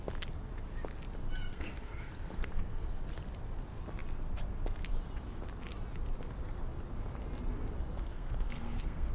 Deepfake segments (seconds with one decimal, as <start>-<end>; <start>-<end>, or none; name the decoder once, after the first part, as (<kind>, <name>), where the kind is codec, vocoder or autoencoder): 1.5-3.0 (codec, SNAC); 8.1-9.1